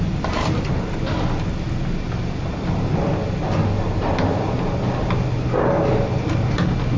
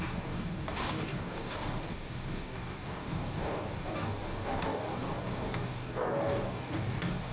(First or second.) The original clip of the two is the first